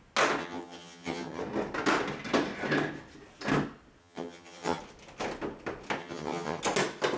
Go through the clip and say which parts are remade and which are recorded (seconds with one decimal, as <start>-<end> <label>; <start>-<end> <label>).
0.0-0.4 recorded; 0.4-1.4 remade; 1.4-4.0 recorded; 4.0-4.8 remade; 4.8-6.0 recorded; 6.0-6.6 remade; 6.6-7.2 recorded